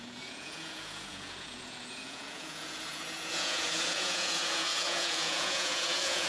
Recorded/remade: remade